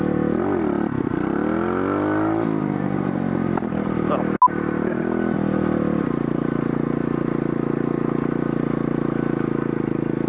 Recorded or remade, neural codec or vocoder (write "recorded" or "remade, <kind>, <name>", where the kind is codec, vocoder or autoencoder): recorded